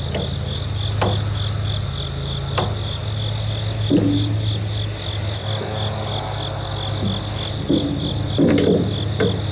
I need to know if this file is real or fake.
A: real